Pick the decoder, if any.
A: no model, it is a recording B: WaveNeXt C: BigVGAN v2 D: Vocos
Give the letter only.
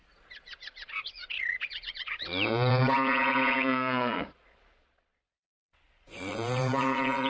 D